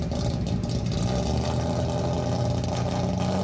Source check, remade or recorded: recorded